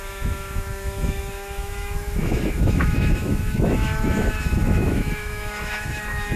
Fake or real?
fake